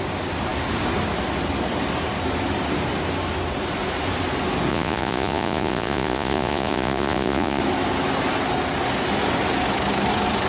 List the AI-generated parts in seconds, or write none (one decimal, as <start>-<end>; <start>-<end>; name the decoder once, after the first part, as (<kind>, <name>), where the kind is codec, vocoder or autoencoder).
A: 4.7-7.6 (vocoder, Vocos)